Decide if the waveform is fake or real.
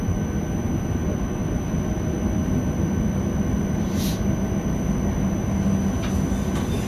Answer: real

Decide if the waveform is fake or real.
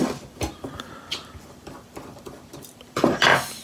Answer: fake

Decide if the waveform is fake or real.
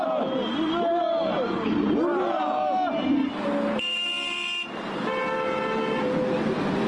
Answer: real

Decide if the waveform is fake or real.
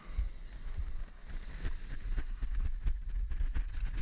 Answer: real